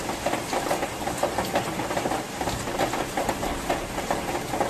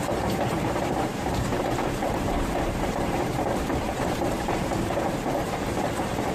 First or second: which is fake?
second